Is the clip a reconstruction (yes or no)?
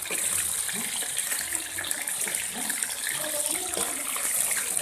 no